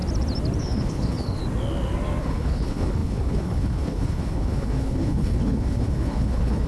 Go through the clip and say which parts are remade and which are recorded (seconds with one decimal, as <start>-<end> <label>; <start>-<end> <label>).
0.0-0.6 recorded; 0.6-1.4 remade; 1.4-2.2 recorded; 2.2-6.7 remade